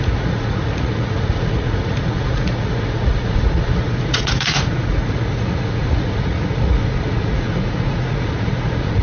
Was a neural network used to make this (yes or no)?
yes